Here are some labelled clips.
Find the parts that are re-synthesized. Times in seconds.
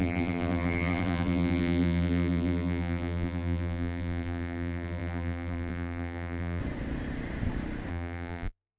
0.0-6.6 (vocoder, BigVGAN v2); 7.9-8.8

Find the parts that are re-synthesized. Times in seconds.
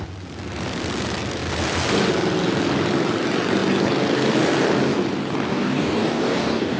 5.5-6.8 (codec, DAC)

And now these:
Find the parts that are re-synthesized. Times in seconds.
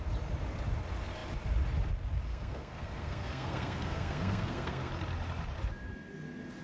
2.3-4.9 (codec, SNAC)